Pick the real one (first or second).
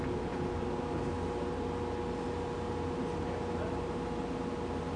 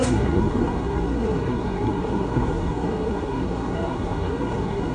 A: first